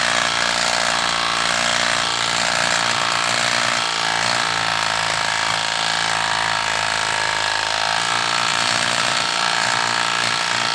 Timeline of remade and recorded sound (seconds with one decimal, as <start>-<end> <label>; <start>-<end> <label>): 0.0-8.5 recorded; 8.5-9.7 remade; 9.7-10.7 recorded